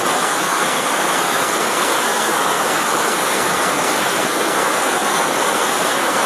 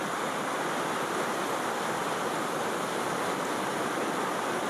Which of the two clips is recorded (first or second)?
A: second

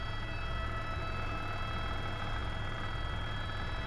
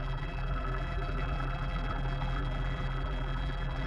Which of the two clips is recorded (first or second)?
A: first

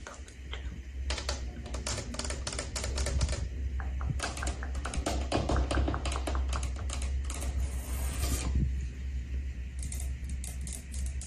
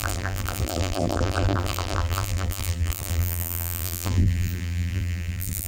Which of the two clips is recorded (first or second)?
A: first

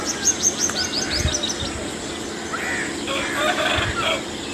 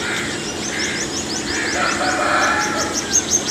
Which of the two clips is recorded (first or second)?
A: first